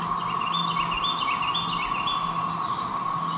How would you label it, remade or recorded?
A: recorded